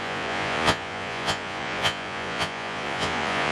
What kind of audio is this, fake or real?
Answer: fake